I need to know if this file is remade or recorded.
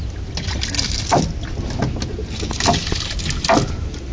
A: recorded